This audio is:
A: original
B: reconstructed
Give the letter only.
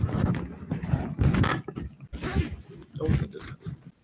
A